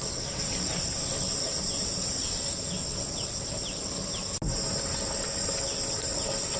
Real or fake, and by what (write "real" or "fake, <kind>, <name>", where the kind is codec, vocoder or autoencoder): real